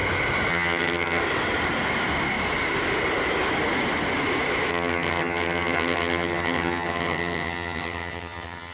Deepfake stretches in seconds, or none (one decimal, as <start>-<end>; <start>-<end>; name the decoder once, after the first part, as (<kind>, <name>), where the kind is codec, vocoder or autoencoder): 0.5-1.2 (vocoder, HiFi-GAN); 4.7-8.7